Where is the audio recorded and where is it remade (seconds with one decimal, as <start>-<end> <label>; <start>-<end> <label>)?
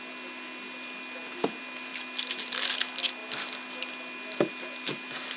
0.0-5.4 recorded